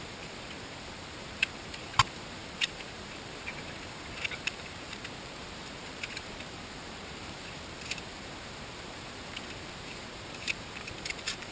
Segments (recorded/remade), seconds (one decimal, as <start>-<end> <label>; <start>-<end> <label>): 0.0-11.5 remade